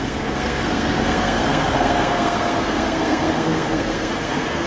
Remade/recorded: remade